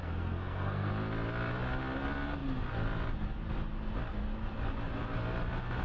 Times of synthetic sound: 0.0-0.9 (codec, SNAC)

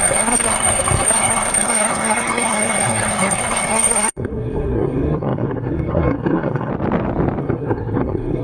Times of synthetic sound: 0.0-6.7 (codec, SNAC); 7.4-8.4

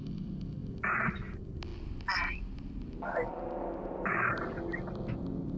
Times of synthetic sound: none

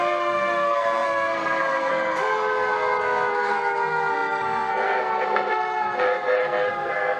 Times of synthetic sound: 0.0-7.2 (codec, SNAC)